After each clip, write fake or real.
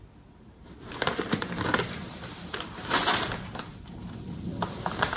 fake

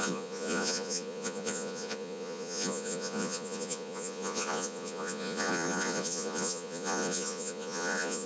fake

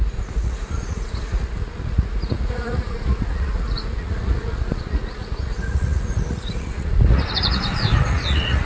fake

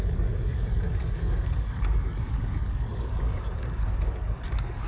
fake